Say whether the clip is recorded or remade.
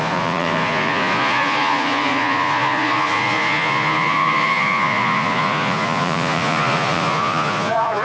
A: remade